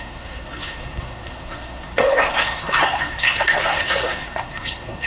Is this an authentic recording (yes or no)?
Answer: no